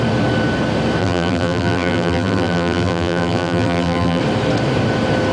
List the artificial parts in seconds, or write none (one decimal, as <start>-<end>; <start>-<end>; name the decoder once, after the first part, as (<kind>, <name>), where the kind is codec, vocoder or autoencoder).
1.0-4.2 (vocoder, BigVGAN v2)